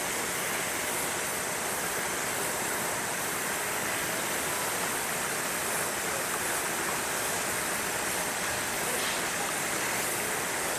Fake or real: real